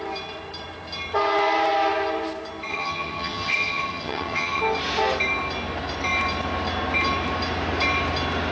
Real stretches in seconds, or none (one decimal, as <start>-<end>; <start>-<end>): 0.0-2.7; 4.6-8.5